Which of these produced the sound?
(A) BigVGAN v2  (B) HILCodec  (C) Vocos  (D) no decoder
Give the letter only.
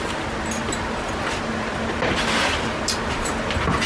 D